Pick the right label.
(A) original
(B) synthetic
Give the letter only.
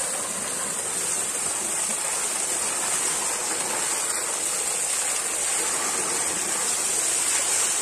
A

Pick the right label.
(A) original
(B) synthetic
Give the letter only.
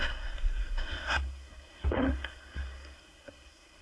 B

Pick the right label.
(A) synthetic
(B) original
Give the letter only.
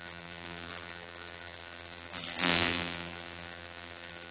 A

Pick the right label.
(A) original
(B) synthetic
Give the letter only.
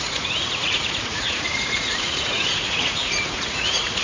B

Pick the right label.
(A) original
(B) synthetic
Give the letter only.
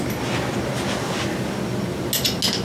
A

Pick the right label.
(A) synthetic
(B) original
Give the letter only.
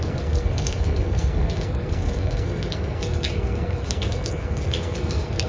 A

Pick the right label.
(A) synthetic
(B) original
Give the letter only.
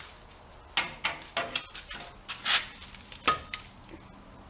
B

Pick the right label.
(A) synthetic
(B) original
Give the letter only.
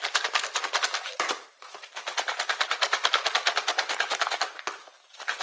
B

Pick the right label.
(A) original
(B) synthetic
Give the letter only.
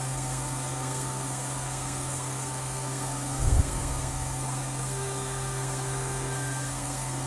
B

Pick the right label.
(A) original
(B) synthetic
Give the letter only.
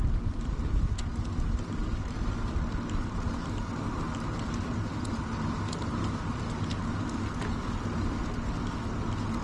A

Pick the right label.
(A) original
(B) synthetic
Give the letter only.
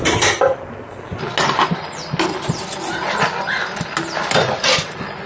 A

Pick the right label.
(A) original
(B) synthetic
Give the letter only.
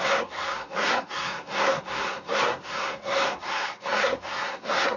B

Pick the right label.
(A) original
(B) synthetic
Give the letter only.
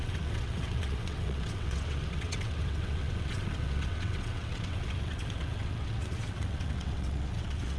B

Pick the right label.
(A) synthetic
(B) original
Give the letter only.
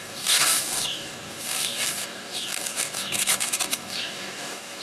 A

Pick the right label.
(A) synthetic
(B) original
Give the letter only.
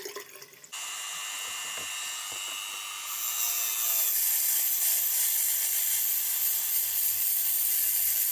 B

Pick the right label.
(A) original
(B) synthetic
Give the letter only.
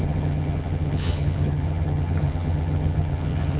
B